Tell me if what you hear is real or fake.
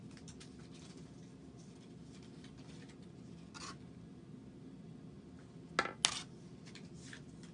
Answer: real